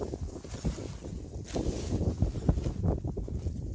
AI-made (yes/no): no